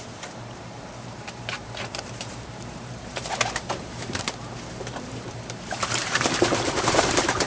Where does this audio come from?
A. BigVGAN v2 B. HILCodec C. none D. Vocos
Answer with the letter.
A